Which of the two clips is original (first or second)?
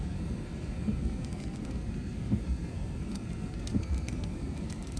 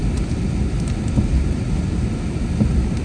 second